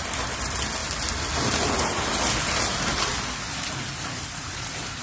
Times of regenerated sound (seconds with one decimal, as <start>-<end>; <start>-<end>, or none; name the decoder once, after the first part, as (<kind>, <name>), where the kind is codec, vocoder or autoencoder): none